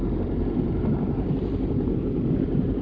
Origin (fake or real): fake